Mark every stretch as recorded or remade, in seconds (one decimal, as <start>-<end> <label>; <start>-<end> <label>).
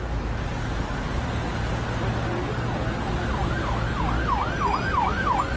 0.0-5.6 recorded